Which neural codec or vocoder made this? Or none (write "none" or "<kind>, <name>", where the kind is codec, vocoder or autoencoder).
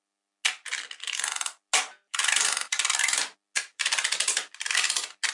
none